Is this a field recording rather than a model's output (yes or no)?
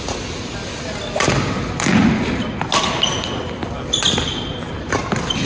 yes